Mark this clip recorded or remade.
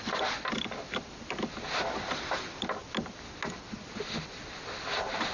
recorded